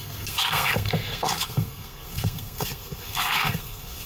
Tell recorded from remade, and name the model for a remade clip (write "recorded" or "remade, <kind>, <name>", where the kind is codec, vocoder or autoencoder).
remade, codec, SNAC